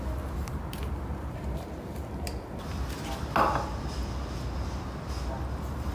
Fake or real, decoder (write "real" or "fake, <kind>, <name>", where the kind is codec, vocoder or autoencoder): real